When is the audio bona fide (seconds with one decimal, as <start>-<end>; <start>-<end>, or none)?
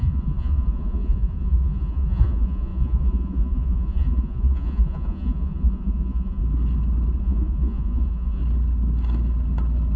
6.4-7.2; 8.4-10.0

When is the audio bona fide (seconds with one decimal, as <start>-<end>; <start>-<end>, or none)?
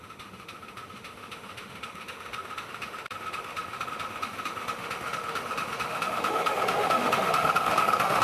none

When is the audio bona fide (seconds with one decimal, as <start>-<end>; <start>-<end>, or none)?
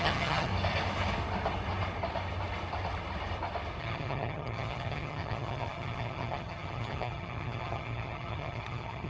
0.5-3.8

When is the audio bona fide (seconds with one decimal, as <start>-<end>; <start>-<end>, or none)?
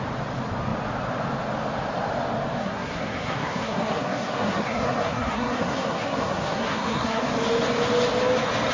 0.0-2.6; 7.2-8.7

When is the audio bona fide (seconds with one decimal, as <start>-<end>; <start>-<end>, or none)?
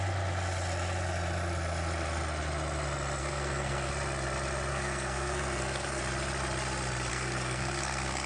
0.0-3.2; 3.9-4.7; 6.0-7.1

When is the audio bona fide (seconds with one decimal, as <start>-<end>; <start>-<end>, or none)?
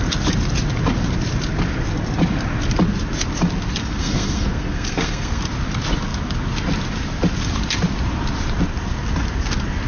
0.0-3.8; 5.4-9.9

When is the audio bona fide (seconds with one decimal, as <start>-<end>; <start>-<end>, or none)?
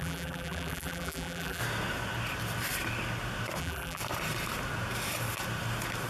1.6-3.6; 4.0-6.1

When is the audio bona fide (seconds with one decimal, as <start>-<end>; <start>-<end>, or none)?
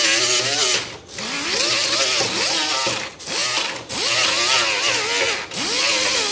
0.0-6.3